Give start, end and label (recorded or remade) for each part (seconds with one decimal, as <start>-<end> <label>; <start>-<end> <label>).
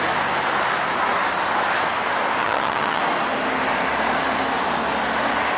0.0-2.4 recorded; 2.4-3.0 remade; 3.0-5.6 recorded